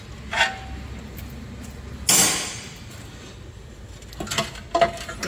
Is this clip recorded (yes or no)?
yes